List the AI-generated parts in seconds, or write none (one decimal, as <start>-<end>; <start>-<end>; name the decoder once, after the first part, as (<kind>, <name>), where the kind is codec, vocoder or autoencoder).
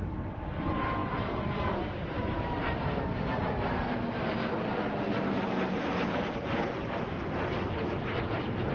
none